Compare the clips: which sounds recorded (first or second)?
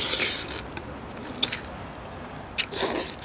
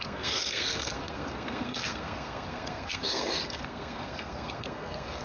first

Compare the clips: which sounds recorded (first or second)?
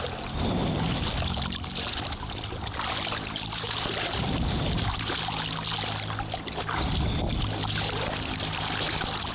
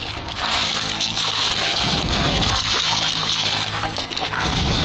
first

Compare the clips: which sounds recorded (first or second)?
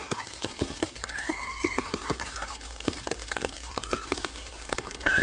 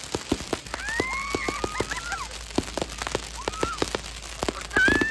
second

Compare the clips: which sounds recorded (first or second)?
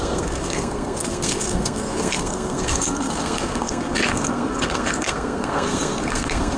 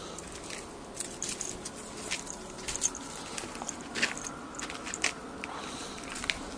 second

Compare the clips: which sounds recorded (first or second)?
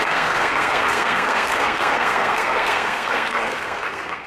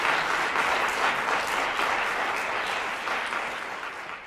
second